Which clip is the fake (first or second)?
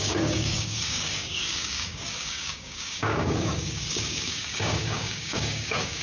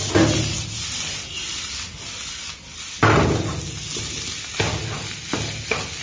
first